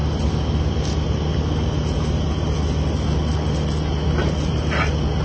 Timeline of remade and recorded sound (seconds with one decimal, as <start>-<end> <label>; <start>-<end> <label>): 0.0-5.2 recorded